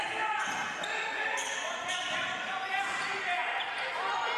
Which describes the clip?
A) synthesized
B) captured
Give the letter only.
B